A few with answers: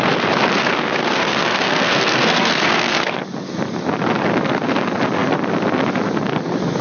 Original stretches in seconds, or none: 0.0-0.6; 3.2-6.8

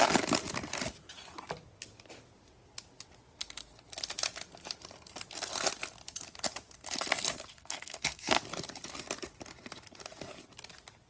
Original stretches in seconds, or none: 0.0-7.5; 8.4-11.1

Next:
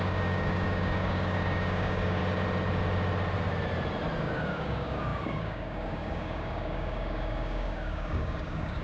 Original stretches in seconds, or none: 2.2-4.2

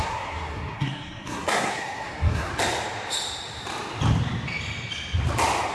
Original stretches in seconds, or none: 2.5-5.7

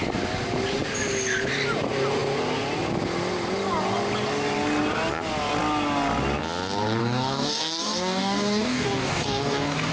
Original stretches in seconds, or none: 0.0-7.0

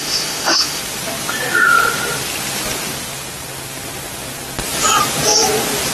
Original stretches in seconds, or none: 0.8-5.9